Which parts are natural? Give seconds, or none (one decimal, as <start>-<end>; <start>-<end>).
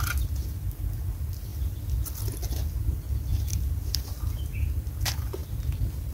0.0-1.5; 2.2-3.3; 4.2-6.1